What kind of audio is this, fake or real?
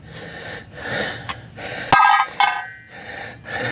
real